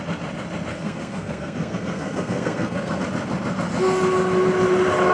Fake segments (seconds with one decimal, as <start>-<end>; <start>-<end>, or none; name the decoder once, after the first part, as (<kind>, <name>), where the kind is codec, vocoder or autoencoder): 0.7-3.0 (codec, SNAC)